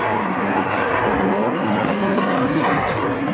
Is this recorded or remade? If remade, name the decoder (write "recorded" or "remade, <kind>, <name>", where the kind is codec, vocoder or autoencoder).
remade, codec, SNAC